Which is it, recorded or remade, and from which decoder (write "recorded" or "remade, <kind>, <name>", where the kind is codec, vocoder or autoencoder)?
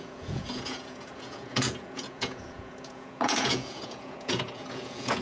remade, vocoder, Vocos